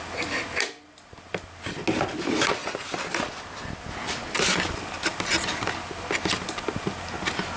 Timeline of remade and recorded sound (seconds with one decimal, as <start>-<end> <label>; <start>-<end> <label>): 0.0-7.6 recorded